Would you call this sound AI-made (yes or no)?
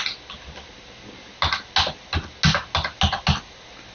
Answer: no